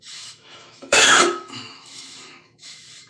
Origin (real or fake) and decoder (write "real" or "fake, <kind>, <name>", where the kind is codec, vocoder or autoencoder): fake, autoencoder, DAC-VAE